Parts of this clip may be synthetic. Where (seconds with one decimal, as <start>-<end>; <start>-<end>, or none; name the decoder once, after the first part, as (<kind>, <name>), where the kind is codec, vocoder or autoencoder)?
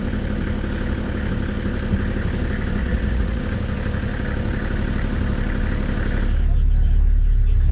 2.8-3.4 (vocoder, Vocos)